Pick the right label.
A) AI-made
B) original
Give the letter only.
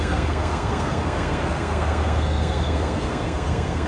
A